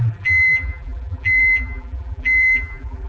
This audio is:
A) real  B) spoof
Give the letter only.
B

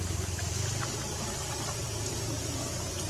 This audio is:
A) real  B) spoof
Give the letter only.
A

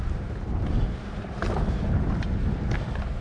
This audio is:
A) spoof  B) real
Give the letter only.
A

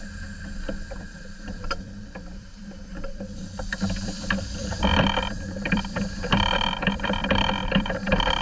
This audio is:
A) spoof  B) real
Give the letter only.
A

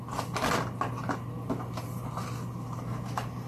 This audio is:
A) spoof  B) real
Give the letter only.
B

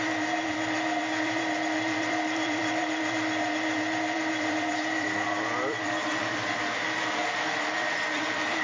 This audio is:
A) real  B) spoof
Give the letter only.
B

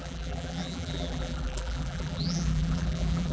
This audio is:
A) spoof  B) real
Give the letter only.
A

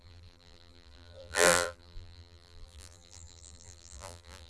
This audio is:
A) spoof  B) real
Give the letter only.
A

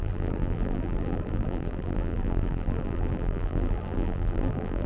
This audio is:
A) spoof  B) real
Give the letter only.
A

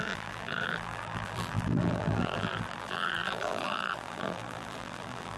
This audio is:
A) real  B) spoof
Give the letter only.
B